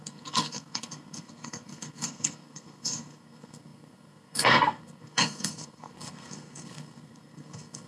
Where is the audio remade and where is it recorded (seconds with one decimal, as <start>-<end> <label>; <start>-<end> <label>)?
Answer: 0.0-7.9 remade